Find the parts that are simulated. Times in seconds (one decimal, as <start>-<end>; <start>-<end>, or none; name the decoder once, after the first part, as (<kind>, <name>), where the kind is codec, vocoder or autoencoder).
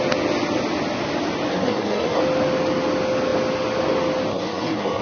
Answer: 1.5-2.2 (codec, SNAC); 4.3-5.0